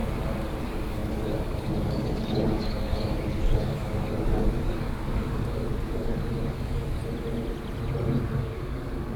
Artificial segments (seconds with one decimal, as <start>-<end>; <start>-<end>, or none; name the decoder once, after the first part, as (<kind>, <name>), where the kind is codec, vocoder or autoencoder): 0.6-7.0 (codec, DAC); 8.3-9.2